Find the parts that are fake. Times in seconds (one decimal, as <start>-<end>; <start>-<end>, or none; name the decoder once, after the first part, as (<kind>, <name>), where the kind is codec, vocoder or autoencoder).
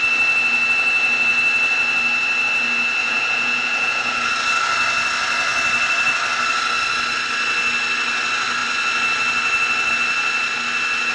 3.0-4.3 (vocoder, Vocos)